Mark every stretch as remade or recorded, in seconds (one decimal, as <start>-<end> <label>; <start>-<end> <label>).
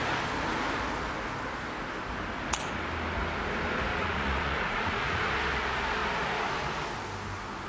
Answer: 0.0-3.9 recorded; 3.9-5.3 remade; 5.3-7.7 recorded